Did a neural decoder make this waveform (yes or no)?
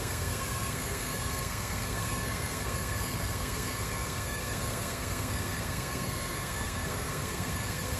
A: yes